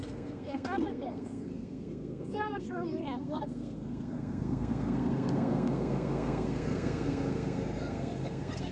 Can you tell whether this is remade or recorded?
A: remade